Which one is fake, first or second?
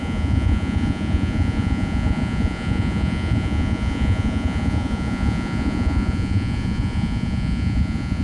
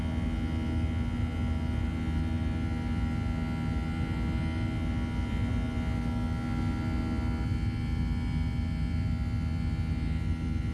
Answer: first